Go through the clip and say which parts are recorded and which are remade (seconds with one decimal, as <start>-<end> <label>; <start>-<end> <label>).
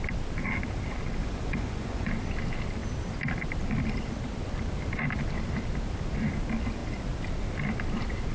0.0-1.2 recorded; 1.2-2.1 remade; 2.1-8.3 recorded